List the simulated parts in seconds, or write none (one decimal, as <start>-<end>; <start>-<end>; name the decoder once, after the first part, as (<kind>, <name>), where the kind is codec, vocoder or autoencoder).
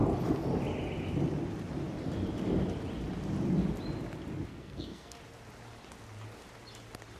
4.5-5.2 (codec, SNAC)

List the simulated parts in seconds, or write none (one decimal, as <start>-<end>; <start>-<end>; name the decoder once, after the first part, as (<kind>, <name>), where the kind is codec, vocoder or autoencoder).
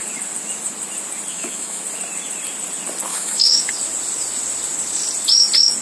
1.3-1.8 (autoencoder, DAC-VAE); 3.1-3.7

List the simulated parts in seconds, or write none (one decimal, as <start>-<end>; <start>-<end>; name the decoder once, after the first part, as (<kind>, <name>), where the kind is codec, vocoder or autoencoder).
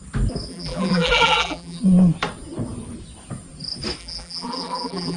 0.5-1.8 (vocoder, BigVGAN v2); 4.0-5.2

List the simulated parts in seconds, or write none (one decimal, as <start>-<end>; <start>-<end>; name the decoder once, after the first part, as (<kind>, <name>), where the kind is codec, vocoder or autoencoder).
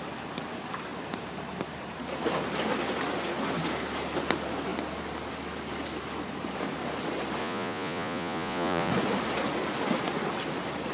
7.4-8.9 (vocoder, Vocos)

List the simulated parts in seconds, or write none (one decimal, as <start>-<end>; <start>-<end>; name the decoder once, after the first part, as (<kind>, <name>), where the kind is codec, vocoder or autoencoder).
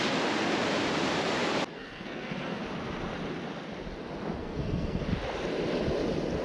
1.7-2.6 (codec, SNAC); 4.4-5.0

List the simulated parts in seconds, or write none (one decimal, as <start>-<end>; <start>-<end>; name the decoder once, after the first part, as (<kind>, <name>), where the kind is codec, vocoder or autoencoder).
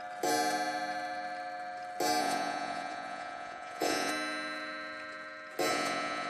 2.2-4.1 (vocoder, Vocos); 5.7-6.3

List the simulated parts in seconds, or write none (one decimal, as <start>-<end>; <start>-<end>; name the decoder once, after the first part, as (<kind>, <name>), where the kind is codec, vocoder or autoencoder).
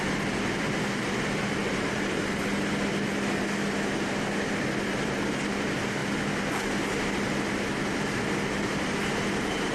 1.6-2.4 (vocoder, BigVGAN v2)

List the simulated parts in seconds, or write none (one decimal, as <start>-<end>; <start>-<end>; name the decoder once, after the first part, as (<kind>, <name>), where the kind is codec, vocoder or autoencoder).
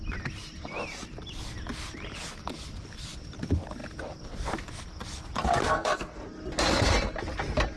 5.6-6.2 (codec, SNAC)